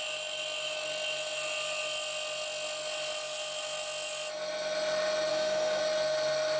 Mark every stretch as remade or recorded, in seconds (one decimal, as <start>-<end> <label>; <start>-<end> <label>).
0.0-5.3 recorded; 5.3-5.8 remade; 5.8-6.6 recorded